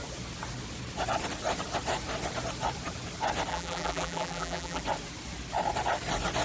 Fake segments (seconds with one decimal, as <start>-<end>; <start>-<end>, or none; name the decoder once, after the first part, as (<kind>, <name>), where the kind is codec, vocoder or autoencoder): 3.5-4.8 (vocoder, BigVGAN v2)